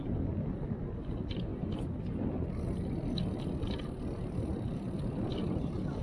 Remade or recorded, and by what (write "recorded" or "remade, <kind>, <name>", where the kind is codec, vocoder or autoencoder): recorded